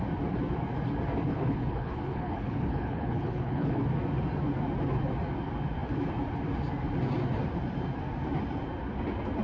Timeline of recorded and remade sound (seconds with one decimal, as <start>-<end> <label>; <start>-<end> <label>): 0.0-1.3 recorded; 1.3-3.8 remade; 3.8-9.4 recorded